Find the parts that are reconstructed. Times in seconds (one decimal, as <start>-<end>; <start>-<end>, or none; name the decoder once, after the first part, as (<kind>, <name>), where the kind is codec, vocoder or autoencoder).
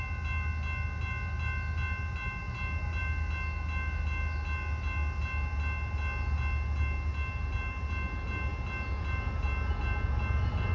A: none